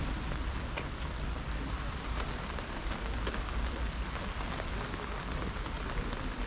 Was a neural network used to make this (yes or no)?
no